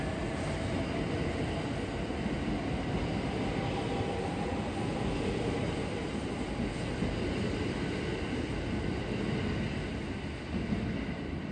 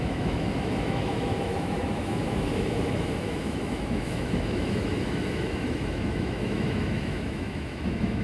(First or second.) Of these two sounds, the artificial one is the second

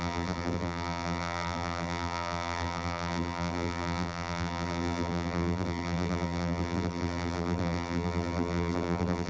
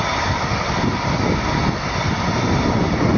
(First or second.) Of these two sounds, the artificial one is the first